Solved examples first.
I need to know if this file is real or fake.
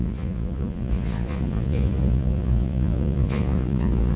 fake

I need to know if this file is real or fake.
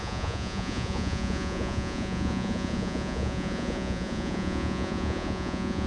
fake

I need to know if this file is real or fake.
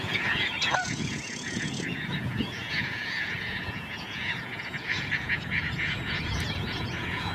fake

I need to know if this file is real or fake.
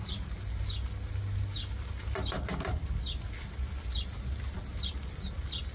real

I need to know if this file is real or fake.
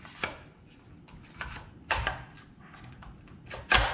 real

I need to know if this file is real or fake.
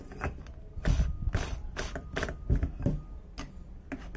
real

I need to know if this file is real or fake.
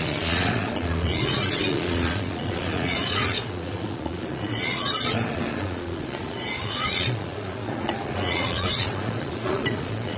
fake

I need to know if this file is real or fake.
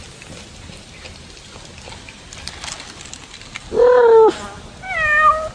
real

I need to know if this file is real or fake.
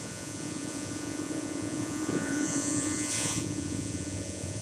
fake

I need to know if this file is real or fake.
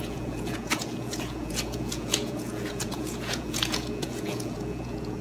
fake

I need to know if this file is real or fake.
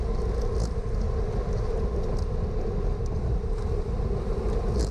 real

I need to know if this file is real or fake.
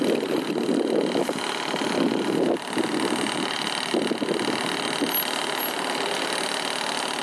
real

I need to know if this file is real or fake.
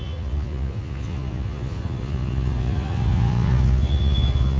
fake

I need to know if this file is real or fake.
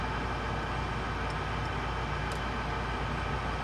real